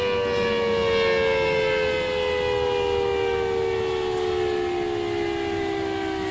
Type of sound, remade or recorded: recorded